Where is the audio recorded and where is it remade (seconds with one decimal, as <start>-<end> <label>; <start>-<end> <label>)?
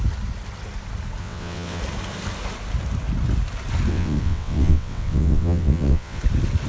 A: 0.0-1.2 recorded; 1.2-1.8 remade; 1.8-3.9 recorded; 3.9-6.2 remade; 6.2-6.7 recorded